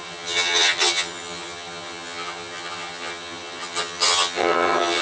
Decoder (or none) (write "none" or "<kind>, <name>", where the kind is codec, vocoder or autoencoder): vocoder, HiFi-GAN